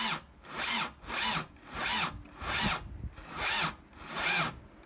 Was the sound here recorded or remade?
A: recorded